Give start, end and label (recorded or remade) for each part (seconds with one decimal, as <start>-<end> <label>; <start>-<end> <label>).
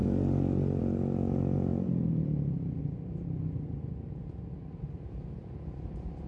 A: 0.0-6.3 recorded